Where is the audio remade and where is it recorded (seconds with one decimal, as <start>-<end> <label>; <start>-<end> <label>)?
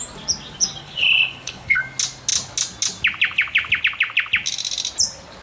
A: 0.0-0.8 recorded; 0.8-1.8 remade; 1.8-5.4 recorded